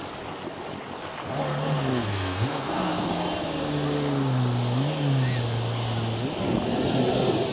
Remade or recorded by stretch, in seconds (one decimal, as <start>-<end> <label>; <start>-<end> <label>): 0.0-1.9 recorded; 1.9-3.1 remade; 3.1-7.5 recorded

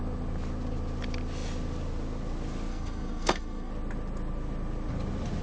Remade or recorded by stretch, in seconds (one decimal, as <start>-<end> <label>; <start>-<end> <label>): 0.0-2.7 recorded; 2.7-3.7 remade; 3.7-5.4 recorded

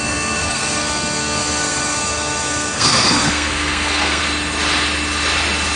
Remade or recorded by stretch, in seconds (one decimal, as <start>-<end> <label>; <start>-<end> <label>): 0.0-4.2 remade; 4.2-5.8 recorded

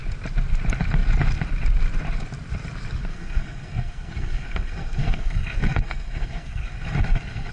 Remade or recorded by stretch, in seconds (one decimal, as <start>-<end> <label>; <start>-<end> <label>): 0.0-3.1 recorded; 3.1-7.5 remade

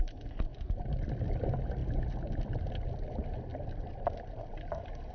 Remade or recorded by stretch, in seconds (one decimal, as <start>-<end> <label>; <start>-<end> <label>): 0.0-5.1 recorded

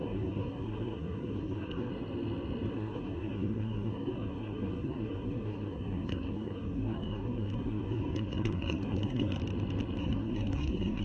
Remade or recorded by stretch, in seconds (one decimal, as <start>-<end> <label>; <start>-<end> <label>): 0.0-1.9 remade; 1.9-2.7 recorded; 2.7-9.4 remade; 9.4-10.0 recorded; 10.0-11.0 remade